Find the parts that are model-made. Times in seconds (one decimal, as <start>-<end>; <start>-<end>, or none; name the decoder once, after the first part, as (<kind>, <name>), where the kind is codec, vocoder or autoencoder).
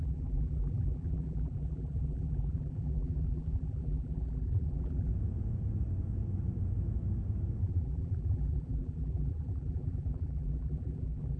0.0-5.1 (vocoder, BigVGAN v2); 7.6-11.4